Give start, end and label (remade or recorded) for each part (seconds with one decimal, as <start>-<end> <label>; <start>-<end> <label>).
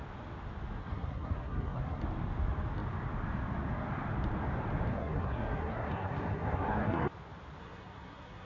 0.0-0.8 recorded; 0.8-2.0 remade; 2.0-4.9 recorded; 4.9-7.1 remade; 7.1-7.6 recorded; 7.6-8.5 remade